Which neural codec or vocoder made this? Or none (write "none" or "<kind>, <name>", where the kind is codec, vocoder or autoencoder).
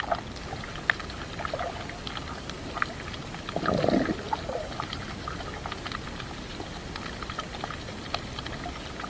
none